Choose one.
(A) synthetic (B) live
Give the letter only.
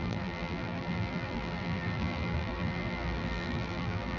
A